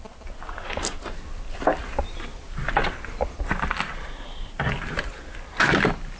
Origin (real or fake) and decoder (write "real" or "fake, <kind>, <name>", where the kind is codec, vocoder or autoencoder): real